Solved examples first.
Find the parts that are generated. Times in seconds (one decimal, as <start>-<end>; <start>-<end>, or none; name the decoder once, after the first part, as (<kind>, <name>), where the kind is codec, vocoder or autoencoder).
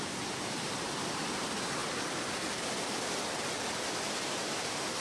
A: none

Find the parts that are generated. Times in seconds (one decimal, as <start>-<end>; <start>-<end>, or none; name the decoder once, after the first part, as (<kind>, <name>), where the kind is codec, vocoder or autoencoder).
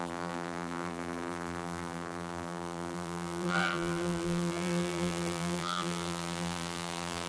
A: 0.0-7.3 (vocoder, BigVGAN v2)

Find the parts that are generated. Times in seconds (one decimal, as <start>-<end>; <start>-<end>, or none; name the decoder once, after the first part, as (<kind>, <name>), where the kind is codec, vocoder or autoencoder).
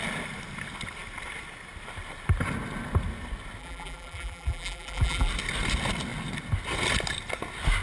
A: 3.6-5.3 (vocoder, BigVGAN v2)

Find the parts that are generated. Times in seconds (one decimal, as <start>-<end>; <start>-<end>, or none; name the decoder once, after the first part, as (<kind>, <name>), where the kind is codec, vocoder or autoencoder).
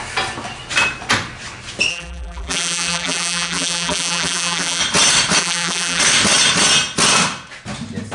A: 1.9-4.8 (vocoder, BigVGAN v2); 5.4-6.0